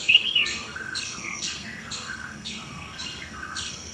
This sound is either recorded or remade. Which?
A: remade